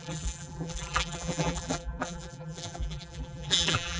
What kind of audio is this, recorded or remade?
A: remade